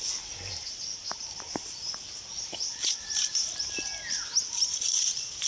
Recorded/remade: recorded